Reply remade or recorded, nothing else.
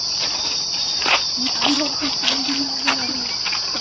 recorded